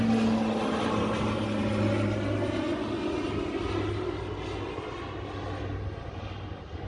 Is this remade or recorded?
recorded